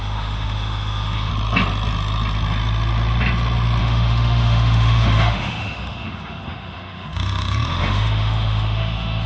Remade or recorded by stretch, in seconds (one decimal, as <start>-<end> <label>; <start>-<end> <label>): 0.0-1.3 remade; 1.3-3.8 recorded; 3.8-9.3 remade